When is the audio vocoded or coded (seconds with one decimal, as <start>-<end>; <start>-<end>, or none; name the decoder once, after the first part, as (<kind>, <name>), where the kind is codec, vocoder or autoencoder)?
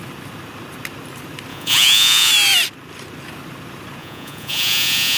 1.5-2.3 (vocoder, Vocos); 4.0-5.2